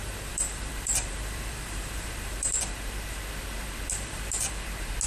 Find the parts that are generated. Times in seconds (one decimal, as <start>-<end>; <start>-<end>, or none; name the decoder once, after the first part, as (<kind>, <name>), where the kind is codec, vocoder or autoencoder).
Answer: 0.0-2.6 (vocoder, BigVGAN v2)